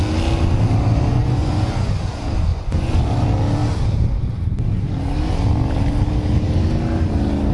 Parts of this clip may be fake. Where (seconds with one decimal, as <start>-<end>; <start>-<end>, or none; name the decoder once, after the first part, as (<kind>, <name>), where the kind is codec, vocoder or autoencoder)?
1.1-1.9 (vocoder, Vocos); 2.5-3.0